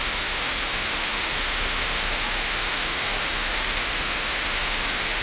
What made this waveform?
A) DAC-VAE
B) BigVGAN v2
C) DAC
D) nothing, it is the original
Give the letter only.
A